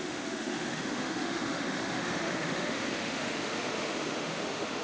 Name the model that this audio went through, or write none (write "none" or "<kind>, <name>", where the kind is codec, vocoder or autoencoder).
autoencoder, DAC-VAE